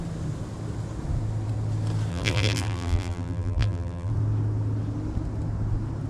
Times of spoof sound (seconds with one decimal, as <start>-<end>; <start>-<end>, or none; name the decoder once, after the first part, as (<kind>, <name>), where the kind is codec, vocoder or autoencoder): 2.1-4.1 (vocoder, BigVGAN v2)